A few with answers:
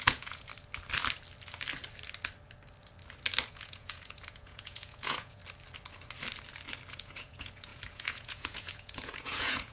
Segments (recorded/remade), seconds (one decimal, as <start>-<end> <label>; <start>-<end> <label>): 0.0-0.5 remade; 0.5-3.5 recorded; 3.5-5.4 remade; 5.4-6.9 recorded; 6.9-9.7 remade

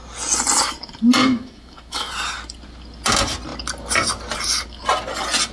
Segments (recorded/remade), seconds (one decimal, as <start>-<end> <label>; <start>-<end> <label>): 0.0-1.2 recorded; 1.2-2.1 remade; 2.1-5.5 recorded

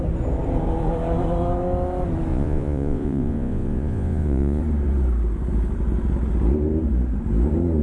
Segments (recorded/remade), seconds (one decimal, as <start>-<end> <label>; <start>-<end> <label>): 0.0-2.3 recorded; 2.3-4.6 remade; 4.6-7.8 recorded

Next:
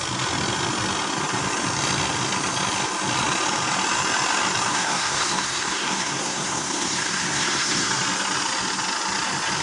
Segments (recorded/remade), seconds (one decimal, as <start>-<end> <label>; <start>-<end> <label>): 0.0-4.7 recorded; 4.7-7.9 remade; 7.9-9.6 recorded

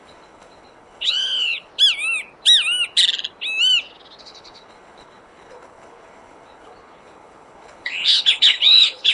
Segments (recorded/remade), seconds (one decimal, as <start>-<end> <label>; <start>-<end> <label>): 0.0-1.7 remade; 1.7-4.2 recorded; 4.2-9.1 remade